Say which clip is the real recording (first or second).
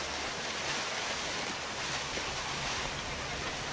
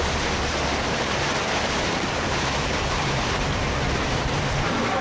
first